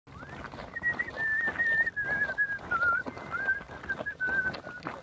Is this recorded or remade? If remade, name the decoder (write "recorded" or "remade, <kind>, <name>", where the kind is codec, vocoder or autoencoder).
recorded